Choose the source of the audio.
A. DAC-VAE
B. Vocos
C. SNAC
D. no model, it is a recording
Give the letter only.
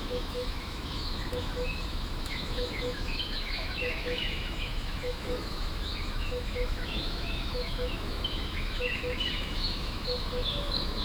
A